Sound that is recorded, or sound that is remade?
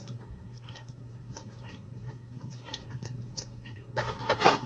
remade